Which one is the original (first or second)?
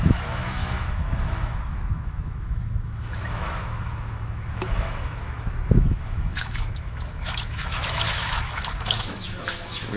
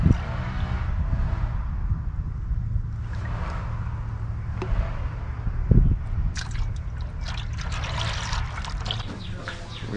second